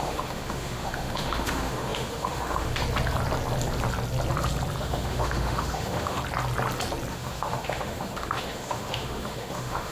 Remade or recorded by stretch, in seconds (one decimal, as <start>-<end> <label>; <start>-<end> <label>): 0.0-2.8 remade; 2.8-4.8 recorded; 4.8-6.2 remade; 6.2-7.1 recorded; 7.1-9.9 remade